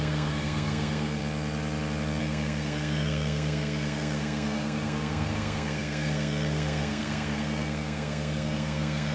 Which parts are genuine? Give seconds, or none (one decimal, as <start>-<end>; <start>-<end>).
1.2-2.2